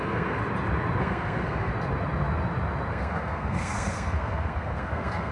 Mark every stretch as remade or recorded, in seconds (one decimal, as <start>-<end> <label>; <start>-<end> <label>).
0.0-0.4 remade; 0.4-1.0 recorded; 1.0-1.7 remade; 1.7-2.9 recorded; 2.9-5.3 remade